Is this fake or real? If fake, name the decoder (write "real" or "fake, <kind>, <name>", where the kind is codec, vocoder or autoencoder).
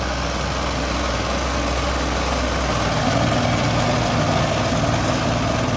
real